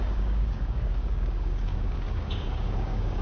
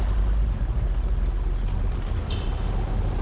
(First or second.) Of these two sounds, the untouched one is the second